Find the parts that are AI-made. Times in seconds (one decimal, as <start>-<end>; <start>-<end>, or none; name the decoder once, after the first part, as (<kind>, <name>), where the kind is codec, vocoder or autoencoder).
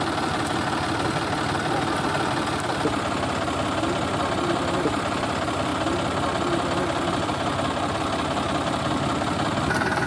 0.0-5.7 (vocoder, BigVGAN v2); 7.2-10.1